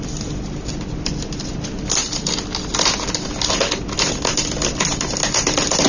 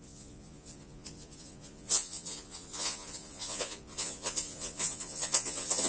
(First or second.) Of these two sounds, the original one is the first